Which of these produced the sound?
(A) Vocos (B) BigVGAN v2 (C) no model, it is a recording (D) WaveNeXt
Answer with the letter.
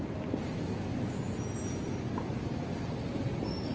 C